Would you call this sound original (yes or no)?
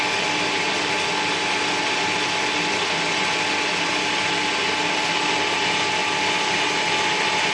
yes